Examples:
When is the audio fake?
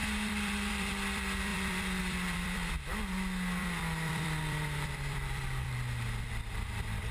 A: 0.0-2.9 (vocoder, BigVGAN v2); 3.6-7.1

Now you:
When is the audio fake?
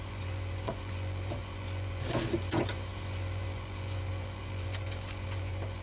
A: 0.0-5.8 (vocoder, Vocos)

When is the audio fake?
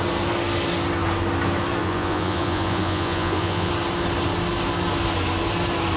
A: 1.8-3.7 (vocoder, Vocos)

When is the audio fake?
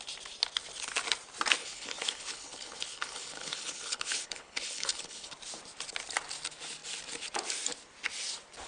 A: 1.6-5.3 (codec, HILCodec)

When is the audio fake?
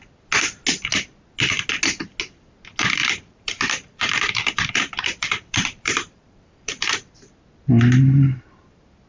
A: 3.0-7.1 (vocoder, BigVGAN v2)